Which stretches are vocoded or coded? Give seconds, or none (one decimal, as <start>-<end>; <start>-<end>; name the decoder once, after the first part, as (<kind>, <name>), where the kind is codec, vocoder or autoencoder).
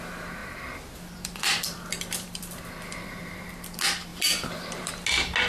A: 0.4-3.5 (vocoder, BigVGAN v2); 4.1-4.9